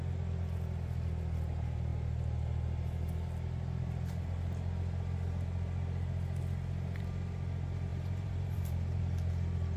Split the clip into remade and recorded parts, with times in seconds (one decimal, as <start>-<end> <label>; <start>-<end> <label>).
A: 0.0-7.9 recorded; 7.9-9.0 remade; 9.0-9.8 recorded